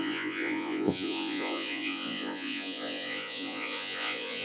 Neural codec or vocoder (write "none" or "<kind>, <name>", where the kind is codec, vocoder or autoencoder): vocoder, Vocos